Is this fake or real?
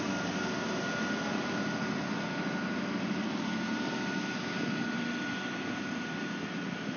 real